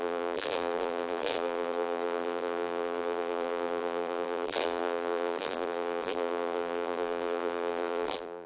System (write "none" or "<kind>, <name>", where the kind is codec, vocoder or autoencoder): vocoder, BigVGAN v2